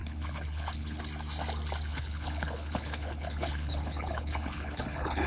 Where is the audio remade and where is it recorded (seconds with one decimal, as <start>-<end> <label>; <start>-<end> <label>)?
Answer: 0.0-1.0 remade; 1.0-1.9 recorded; 1.9-5.3 remade